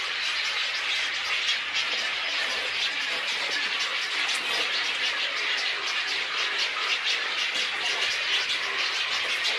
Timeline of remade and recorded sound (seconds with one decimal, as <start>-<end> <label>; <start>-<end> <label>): 0.0-9.6 recorded